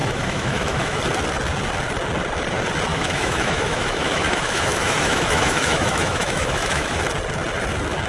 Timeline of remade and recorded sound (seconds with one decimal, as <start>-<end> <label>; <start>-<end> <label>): 0.0-1.0 remade; 1.0-2.9 recorded; 2.9-7.0 remade; 7.0-8.1 recorded